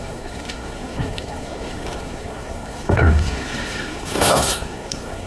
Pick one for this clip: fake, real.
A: fake